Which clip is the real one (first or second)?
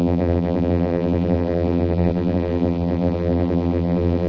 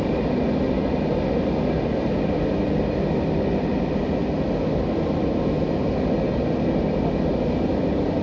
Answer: second